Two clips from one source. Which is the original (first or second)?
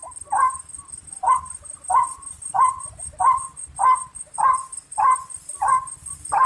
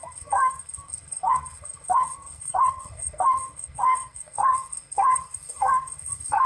first